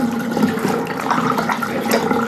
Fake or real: real